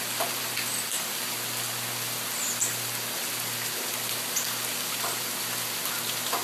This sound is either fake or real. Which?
real